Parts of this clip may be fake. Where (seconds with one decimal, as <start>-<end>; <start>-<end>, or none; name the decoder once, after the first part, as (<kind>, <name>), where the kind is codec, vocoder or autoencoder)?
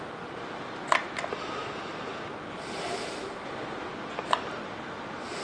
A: none